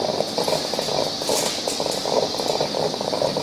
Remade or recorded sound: recorded